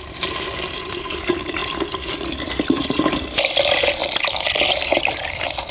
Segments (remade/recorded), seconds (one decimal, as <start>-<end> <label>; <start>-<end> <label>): 0.0-1.6 remade; 1.6-2.8 recorded; 2.8-4.0 remade; 4.0-4.7 recorded; 4.7-5.7 remade